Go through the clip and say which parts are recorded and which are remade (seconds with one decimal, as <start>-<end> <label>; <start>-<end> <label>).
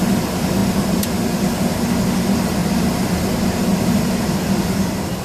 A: 0.0-5.2 recorded